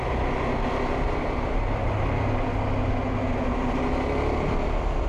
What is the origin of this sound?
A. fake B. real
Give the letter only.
B